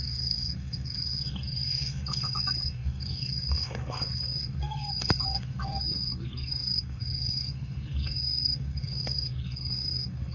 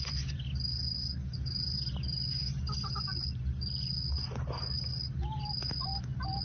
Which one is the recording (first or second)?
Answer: second